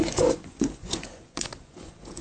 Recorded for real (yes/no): no